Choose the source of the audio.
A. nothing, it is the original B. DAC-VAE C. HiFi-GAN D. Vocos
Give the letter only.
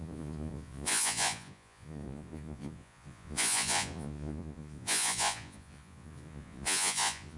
D